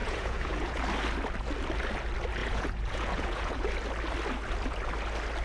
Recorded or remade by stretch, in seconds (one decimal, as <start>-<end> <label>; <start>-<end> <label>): 0.0-0.8 remade; 0.8-2.4 recorded; 2.4-3.7 remade; 3.7-5.4 recorded